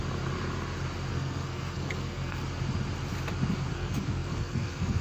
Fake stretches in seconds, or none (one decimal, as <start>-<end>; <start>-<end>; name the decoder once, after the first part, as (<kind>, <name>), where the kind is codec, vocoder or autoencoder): 1.1-2.4 (codec, SNAC); 3.7-5.0